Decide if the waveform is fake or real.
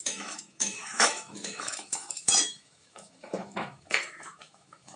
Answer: fake